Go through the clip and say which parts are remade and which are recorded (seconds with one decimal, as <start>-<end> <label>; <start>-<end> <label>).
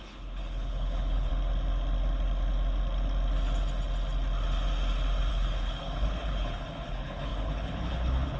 0.0-1.3 remade; 1.3-5.3 recorded; 5.3-8.4 remade